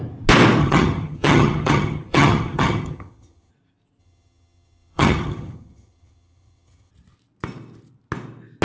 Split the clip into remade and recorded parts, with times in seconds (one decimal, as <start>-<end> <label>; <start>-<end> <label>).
0.0-0.6 recorded; 0.6-3.5 remade; 3.5-4.0 recorded; 4.0-6.9 remade; 6.9-8.6 recorded